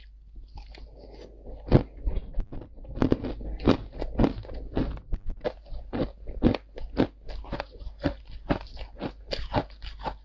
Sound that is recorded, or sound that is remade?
recorded